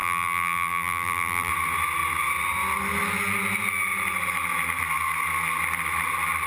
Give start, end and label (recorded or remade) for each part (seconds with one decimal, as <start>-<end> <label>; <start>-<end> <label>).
0.0-1.5 remade; 1.5-6.5 recorded